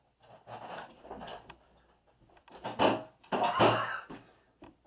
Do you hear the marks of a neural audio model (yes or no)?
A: no